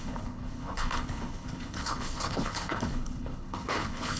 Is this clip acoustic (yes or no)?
no